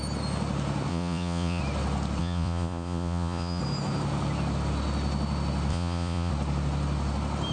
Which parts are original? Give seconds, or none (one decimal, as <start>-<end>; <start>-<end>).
0.0-0.9; 1.6-2.2; 3.6-5.7; 6.3-7.5

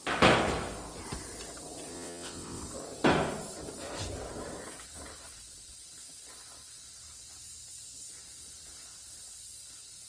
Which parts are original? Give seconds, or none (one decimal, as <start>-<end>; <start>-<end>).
0.0-1.9; 2.6-10.1

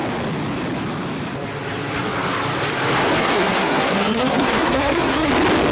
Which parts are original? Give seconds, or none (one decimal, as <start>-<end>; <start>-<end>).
0.0-3.2; 5.3-5.7

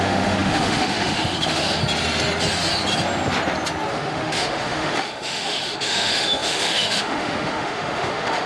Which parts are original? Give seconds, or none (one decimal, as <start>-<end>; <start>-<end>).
1.8-3.9

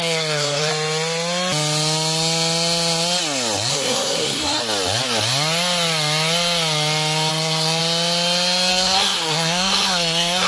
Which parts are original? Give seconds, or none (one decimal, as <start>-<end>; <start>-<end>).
0.7-3.7; 4.6-7.3; 7.8-8.7

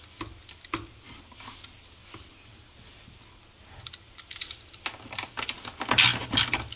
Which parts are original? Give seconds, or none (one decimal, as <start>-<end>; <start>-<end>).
0.0-6.8

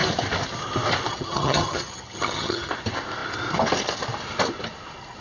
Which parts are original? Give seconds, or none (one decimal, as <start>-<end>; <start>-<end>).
0.0-1.1; 2.7-5.2